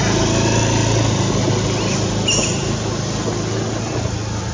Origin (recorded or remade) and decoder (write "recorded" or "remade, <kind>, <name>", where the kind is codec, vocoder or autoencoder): recorded